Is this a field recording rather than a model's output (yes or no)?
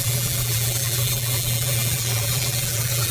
no